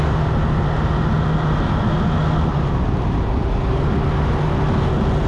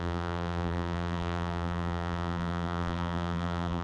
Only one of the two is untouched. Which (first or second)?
first